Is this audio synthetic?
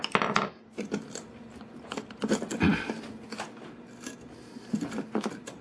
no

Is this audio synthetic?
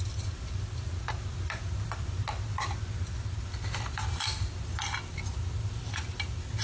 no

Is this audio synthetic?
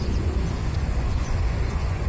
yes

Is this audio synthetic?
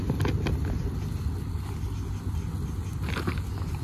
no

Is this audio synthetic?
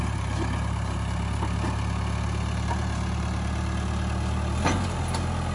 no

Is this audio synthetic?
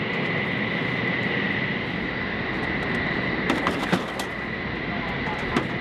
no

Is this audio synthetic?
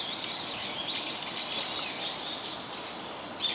no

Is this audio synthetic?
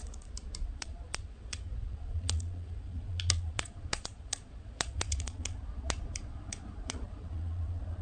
yes